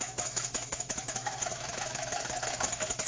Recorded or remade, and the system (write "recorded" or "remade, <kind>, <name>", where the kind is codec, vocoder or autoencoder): remade, autoencoder, DAC-VAE